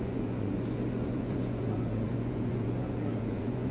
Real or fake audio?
fake